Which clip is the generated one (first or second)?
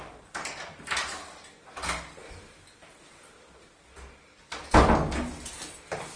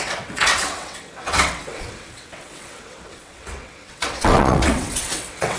second